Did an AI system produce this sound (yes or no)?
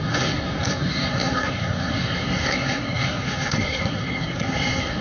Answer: yes